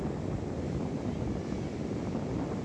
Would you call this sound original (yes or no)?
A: yes